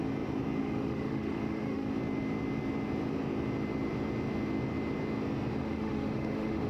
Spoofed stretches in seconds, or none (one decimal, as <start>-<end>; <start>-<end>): 0.6-1.9; 5.6-6.7